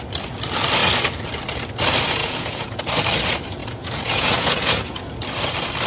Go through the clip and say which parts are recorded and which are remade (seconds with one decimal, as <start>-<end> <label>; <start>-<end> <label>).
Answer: 0.0-2.2 recorded; 2.2-2.8 remade; 2.8-3.6 recorded; 3.6-5.0 remade; 5.0-5.9 recorded